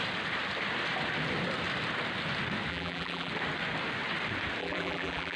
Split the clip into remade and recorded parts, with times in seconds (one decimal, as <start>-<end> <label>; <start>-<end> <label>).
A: 0.0-2.7 recorded; 2.7-3.3 remade; 3.3-4.6 recorded; 4.6-5.4 remade

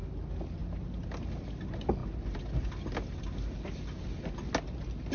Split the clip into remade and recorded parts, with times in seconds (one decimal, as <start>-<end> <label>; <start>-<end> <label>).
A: 0.0-5.1 recorded

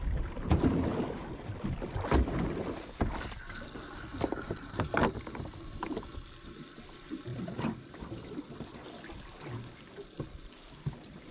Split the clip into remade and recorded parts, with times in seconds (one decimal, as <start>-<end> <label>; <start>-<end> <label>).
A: 0.0-0.9 recorded; 0.9-1.5 remade; 1.5-7.3 recorded; 7.3-8.4 remade; 8.4-11.3 recorded